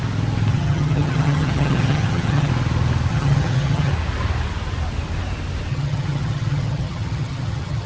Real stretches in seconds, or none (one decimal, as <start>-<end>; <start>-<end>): 0.0-0.5; 2.5-3.1; 3.9-5.7